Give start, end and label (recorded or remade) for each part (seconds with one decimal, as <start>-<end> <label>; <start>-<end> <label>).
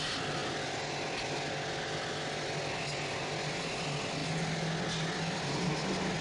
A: 0.0-6.2 recorded